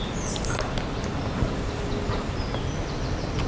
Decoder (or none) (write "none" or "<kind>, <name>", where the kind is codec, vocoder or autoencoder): none